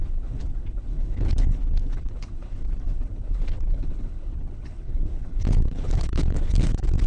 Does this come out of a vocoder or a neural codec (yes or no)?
yes